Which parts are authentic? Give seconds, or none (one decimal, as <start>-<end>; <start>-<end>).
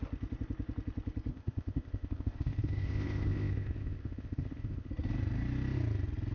0.0-1.3; 4.9-6.3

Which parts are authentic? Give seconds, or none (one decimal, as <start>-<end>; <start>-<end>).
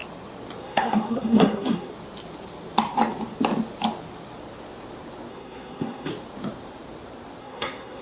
0.0-0.6; 1.9-5.3; 6.1-7.4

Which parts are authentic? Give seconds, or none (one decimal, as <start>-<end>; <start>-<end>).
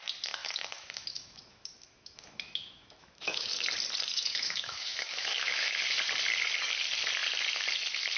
0.0-0.4; 3.5-4.1; 5.8-8.2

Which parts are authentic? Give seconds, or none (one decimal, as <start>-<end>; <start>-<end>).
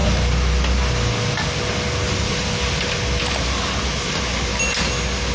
0.0-5.3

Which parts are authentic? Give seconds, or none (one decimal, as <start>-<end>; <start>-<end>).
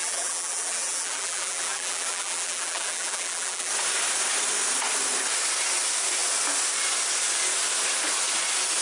3.7-8.8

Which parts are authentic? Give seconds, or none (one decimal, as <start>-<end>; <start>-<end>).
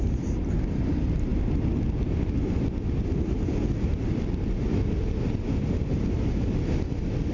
0.0-7.3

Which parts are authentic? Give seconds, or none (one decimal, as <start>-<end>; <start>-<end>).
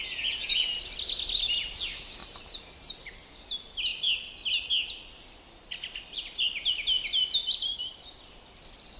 0.0-2.2; 3.1-7.4; 8.0-9.0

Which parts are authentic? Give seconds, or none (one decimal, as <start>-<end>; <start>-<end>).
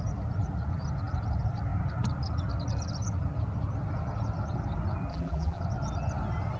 0.0-5.1; 5.6-6.6